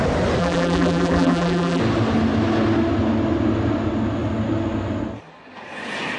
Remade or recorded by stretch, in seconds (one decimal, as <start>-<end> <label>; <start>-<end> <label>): 0.0-0.4 recorded; 0.4-1.8 remade; 1.8-6.2 recorded